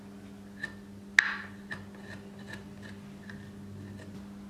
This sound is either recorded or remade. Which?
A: recorded